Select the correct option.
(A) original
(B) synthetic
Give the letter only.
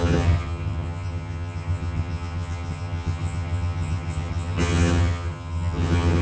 B